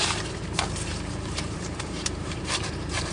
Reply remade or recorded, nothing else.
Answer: remade